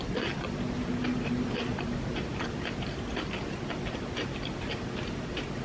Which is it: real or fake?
fake